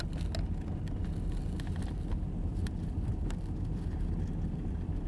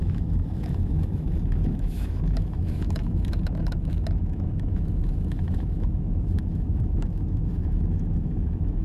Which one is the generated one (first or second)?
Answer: second